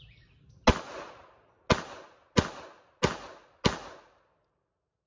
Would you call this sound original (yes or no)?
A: yes